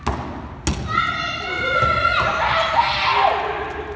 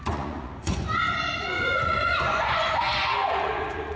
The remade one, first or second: second